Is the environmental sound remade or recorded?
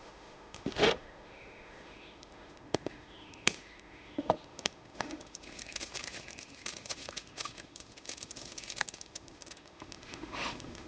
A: remade